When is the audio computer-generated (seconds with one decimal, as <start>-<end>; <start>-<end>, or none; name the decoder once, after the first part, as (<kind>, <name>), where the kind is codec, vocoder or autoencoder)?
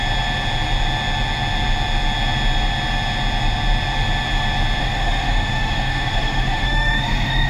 4.8-7.5 (autoencoder, DAC-VAE)